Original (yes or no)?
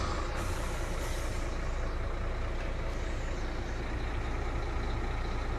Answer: yes